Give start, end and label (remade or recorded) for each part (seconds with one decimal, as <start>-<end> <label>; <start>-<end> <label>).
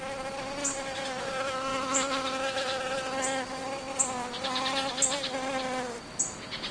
0.0-6.7 recorded